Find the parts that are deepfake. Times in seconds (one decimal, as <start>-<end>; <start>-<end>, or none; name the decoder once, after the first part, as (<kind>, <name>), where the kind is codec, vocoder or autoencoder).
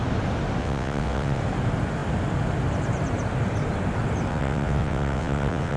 0.6-1.4 (vocoder, WaveNeXt); 4.3-5.8